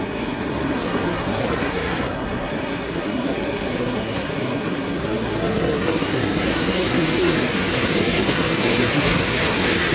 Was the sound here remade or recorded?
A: remade